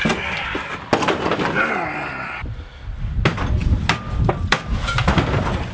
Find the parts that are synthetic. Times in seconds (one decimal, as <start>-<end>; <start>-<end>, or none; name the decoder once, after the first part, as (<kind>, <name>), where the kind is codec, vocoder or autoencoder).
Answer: none